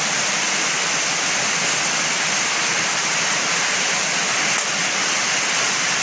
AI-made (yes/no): no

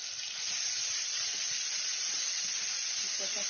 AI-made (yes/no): no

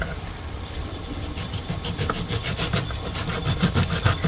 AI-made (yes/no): no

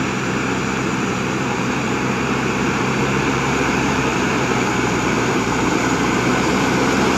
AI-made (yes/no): yes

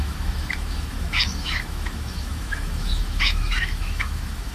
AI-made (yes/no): yes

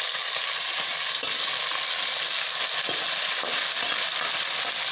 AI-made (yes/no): no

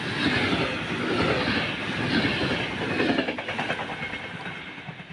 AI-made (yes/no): no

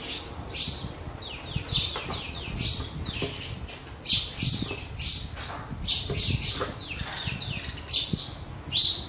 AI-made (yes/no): no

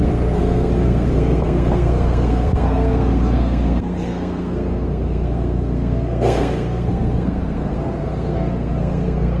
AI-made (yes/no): yes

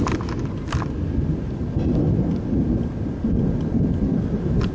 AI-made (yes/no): no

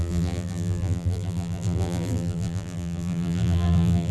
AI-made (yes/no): yes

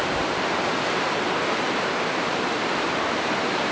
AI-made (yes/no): yes